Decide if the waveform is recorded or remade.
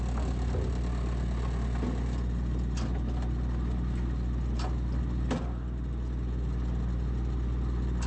recorded